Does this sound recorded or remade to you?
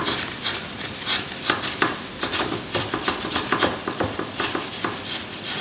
remade